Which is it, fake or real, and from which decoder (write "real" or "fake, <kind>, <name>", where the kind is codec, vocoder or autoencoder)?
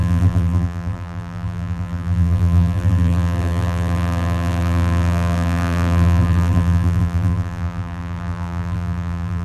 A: fake, vocoder, BigVGAN v2